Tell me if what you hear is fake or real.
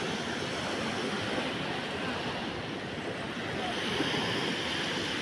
real